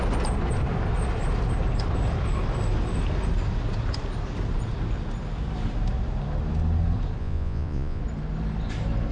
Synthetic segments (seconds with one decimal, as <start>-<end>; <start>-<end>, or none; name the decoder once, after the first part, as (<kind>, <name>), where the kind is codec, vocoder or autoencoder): 7.2-8.0 (vocoder, Vocos)